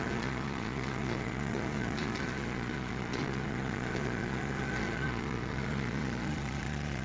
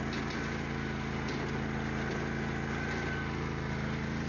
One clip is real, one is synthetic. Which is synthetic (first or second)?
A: first